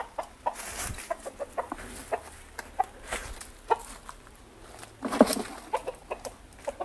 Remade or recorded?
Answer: recorded